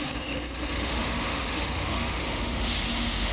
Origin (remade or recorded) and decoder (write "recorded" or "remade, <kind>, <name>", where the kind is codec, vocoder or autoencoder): remade, autoencoder, DAC-VAE